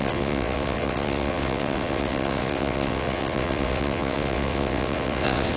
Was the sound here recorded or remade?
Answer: remade